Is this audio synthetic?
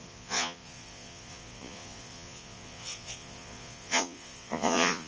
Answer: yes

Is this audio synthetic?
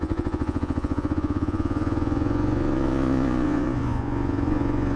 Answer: yes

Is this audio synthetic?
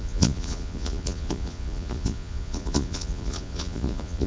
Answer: yes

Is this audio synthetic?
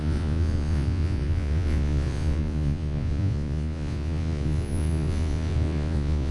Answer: yes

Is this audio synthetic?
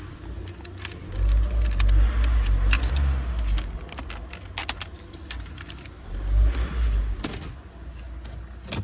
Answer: no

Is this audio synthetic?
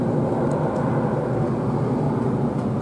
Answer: no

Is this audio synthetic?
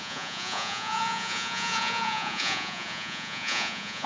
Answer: yes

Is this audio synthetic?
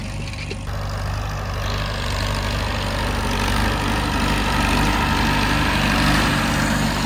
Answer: no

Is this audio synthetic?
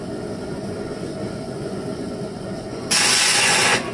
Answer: yes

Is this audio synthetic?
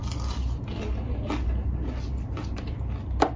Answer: no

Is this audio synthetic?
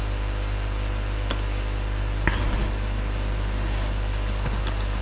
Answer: no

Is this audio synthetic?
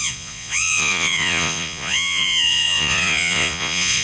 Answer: yes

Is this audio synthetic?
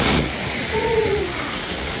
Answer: yes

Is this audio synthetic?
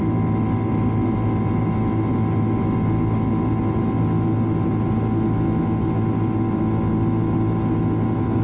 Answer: no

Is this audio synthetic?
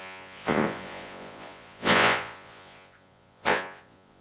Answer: yes